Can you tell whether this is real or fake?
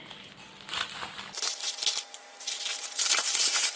fake